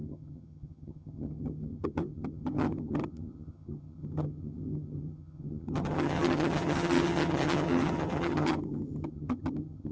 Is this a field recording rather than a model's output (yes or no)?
no